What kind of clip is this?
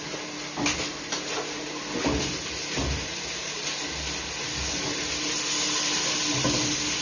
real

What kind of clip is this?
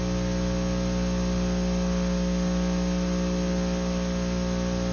real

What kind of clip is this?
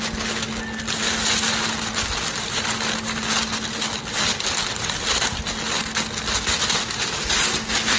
real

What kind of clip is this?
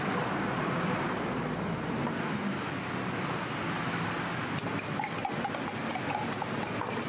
real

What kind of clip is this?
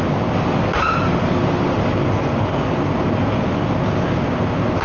real